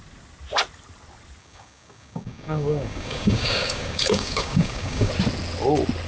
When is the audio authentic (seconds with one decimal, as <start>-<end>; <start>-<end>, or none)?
0.0-1.4; 5.1-6.1